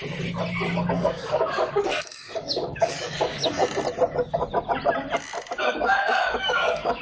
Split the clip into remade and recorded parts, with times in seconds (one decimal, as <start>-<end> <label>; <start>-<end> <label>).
0.0-0.9 recorded; 0.9-3.6 remade; 3.6-5.6 recorded; 5.6-7.0 remade